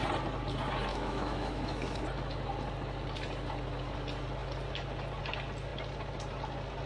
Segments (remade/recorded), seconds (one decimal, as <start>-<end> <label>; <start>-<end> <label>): 0.0-0.9 recorded; 0.9-2.0 remade; 2.0-6.9 recorded